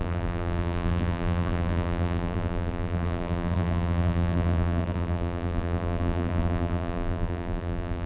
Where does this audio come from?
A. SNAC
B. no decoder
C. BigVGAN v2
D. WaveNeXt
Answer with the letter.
C